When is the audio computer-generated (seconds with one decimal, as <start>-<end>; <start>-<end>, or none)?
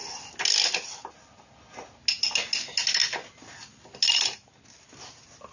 none